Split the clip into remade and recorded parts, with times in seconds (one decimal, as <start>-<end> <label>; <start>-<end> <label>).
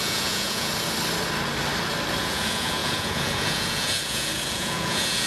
0.0-0.7 remade; 0.7-2.2 recorded; 2.2-5.3 remade